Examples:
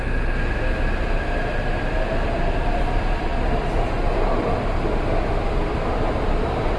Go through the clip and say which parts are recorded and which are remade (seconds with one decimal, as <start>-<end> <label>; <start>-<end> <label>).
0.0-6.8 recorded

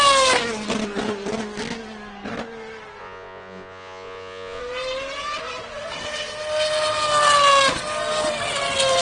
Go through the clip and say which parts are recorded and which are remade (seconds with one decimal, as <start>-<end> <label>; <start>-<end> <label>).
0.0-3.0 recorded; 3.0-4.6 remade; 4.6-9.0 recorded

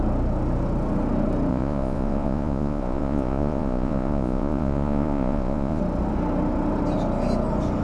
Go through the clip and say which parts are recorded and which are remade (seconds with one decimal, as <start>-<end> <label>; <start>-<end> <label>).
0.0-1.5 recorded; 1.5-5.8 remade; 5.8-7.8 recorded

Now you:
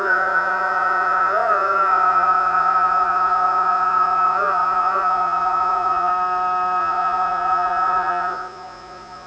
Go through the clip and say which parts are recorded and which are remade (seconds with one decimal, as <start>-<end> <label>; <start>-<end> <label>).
0.0-6.1 remade; 6.1-6.8 recorded; 6.8-9.3 remade

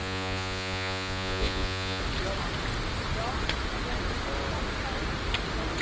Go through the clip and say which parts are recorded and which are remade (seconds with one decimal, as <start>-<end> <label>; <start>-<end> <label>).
0.0-2.0 remade; 2.0-5.8 recorded